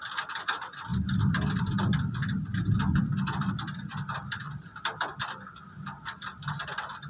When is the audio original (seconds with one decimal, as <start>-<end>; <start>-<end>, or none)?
0.0-7.1